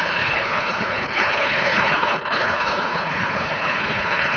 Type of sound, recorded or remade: remade